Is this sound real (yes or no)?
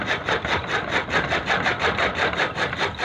no